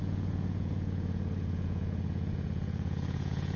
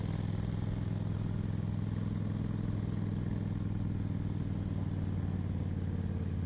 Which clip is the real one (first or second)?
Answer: second